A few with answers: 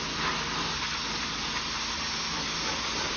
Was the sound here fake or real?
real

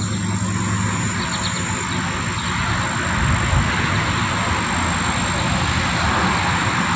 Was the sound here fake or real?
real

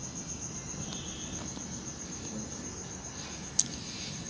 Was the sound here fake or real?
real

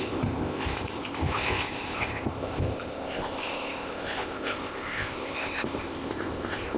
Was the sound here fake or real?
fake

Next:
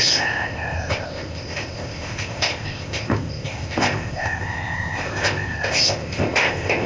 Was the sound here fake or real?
fake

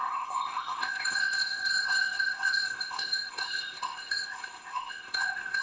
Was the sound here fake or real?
fake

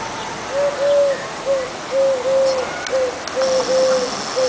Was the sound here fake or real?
real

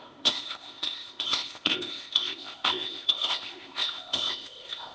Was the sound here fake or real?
fake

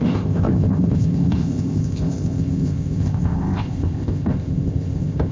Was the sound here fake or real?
fake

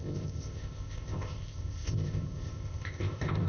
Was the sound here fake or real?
fake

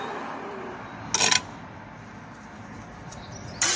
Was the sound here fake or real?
real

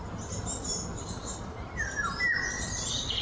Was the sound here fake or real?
real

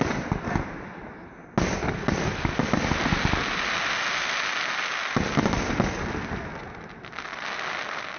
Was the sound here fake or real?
real